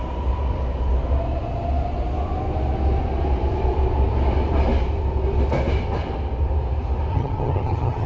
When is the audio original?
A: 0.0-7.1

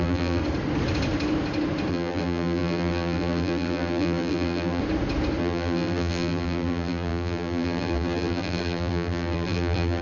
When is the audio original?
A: 0.4-1.9; 4.8-5.4

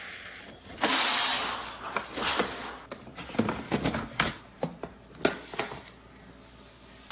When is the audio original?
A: 0.0-7.1